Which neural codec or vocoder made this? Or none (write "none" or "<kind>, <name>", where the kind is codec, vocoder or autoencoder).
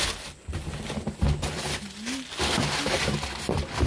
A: none